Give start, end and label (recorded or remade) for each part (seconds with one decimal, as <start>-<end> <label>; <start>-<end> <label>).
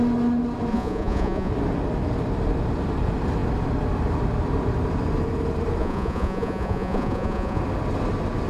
0.0-0.7 recorded; 0.7-1.5 remade; 1.5-5.8 recorded; 5.8-7.6 remade; 7.6-8.5 recorded